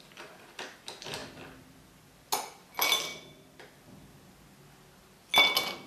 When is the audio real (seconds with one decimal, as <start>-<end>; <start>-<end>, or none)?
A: 0.0-5.9

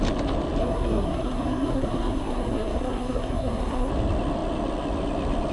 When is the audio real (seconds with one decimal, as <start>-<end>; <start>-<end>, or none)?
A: 0.0-0.6; 3.9-5.5

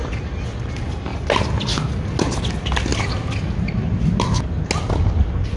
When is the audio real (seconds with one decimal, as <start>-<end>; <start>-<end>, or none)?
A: 0.0-5.6

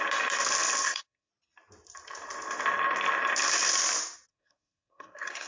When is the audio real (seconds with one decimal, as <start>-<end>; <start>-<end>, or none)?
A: 0.0-0.8; 1.3-4.3